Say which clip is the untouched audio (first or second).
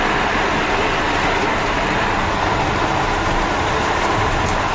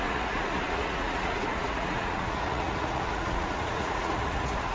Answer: first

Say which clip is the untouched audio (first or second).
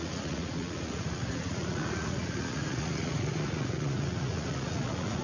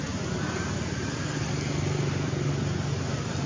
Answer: second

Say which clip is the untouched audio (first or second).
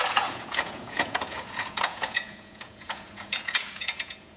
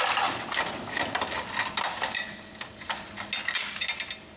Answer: second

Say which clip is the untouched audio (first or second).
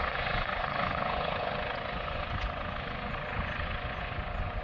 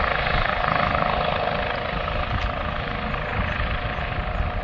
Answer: second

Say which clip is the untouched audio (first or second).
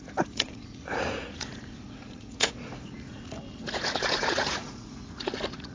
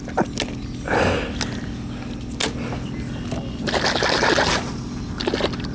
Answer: second